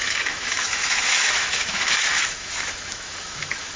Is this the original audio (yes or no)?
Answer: no